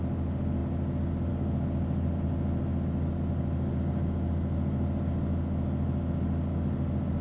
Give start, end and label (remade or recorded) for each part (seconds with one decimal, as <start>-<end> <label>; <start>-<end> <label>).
0.0-7.2 recorded